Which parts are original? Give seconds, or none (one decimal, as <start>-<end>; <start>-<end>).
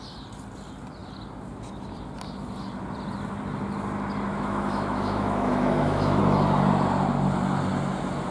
0.0-4.3; 6.2-8.3